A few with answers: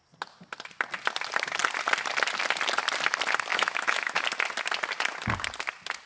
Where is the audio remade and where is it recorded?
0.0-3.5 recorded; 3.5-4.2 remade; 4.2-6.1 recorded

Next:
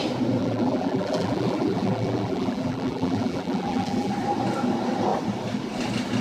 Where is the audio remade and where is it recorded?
0.0-0.4 recorded; 0.4-4.1 remade; 4.1-6.2 recorded